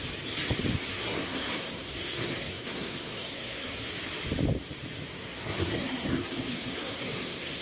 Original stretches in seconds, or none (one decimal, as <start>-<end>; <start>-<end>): 0.0-0.9; 3.9-5.1